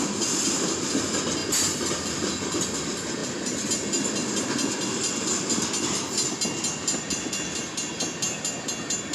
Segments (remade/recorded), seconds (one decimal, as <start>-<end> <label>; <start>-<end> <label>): 0.0-9.1 recorded